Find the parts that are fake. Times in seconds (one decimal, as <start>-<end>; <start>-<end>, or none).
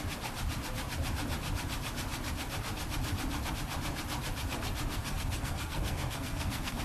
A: 4.9-6.8